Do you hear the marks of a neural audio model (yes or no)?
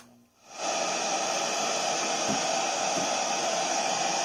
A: no